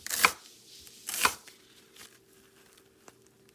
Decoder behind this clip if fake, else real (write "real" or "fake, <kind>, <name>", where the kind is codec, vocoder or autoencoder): real